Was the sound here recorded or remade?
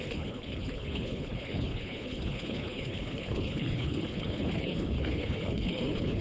remade